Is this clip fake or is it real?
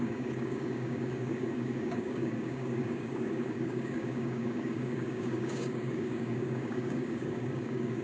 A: fake